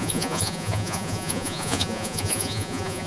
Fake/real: fake